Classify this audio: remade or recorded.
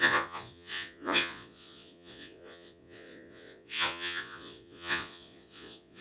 remade